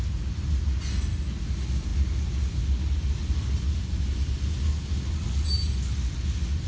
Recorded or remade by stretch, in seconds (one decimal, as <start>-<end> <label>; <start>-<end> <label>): 0.0-6.7 recorded